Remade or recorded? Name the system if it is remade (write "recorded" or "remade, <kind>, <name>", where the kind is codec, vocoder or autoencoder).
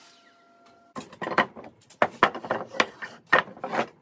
recorded